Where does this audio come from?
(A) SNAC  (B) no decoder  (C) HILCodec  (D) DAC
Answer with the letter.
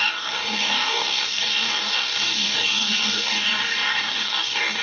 D